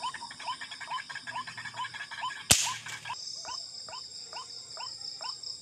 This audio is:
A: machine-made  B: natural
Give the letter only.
B